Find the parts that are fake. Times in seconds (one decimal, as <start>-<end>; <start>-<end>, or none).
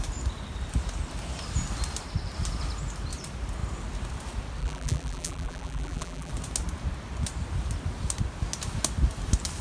4.6-6.3